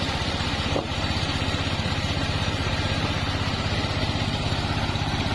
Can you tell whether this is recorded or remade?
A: remade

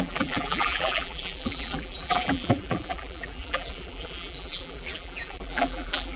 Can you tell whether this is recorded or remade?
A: remade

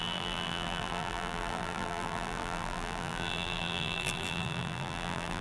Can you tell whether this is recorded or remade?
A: remade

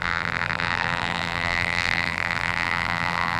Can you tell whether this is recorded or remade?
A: remade